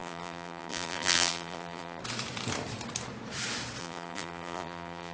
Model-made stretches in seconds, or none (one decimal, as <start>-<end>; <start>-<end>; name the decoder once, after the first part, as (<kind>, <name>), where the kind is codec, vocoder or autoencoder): 0.0-2.0 (vocoder, BigVGAN v2); 3.8-5.1